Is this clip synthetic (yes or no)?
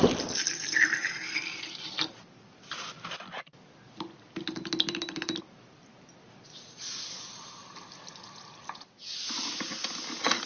no